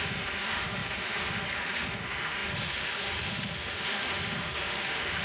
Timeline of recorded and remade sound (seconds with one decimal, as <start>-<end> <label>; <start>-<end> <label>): 0.0-5.2 remade